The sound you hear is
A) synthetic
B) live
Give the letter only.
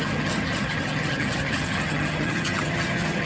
A